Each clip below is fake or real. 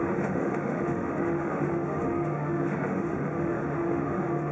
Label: fake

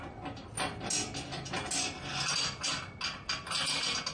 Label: real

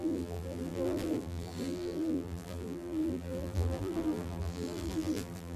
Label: fake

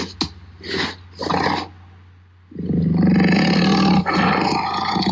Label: real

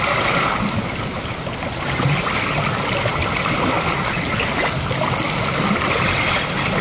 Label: real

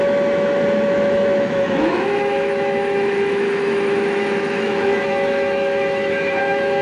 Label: fake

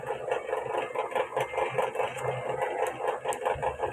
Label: real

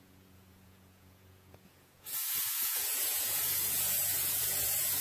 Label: fake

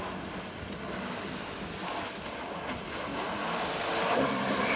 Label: real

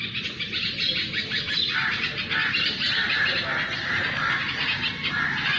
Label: real